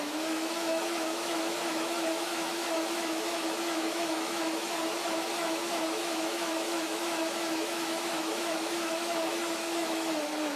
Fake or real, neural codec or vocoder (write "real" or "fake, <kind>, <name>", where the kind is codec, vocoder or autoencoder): fake, autoencoder, DAC-VAE